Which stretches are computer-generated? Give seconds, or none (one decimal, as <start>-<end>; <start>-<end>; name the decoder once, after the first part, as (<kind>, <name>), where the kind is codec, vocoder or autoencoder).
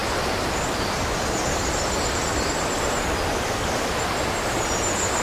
none